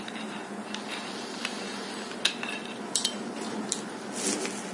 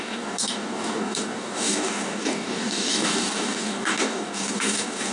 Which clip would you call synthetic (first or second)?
second